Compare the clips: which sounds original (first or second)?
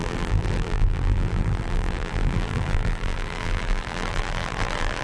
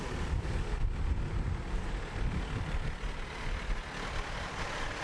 second